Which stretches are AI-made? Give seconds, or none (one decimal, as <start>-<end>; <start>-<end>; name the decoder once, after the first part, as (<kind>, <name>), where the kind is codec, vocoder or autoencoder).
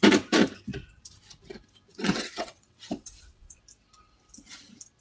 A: 1.9-3.6 (vocoder, WaveNeXt)